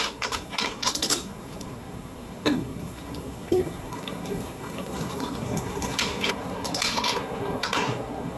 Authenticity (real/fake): fake